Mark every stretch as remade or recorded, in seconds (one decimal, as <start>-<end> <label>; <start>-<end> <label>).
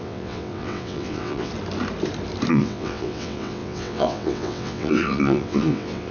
0.0-1.5 remade; 1.5-2.5 recorded; 2.5-6.1 remade